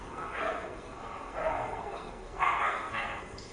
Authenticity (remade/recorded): remade